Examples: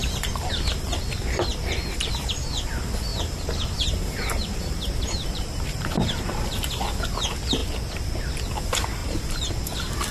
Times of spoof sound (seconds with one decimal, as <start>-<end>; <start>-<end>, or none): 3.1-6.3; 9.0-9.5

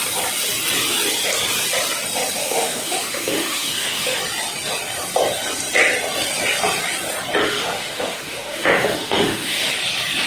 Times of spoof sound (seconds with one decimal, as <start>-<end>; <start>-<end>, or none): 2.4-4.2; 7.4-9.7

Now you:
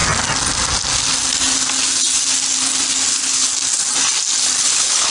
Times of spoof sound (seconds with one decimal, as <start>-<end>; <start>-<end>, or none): 3.1-3.5; 4.6-5.1

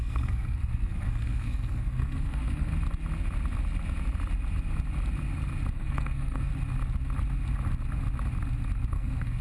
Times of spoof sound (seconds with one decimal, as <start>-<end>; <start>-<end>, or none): 0.0-2.7; 5.7-6.5; 8.9-9.4

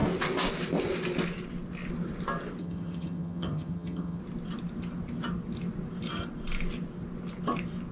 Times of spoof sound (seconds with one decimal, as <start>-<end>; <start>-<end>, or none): 2.6-4.2

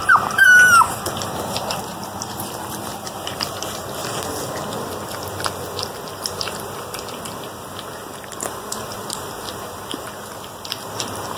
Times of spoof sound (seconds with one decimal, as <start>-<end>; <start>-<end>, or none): 0.0-4.0; 6.1-11.4